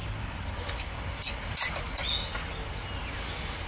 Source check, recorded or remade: recorded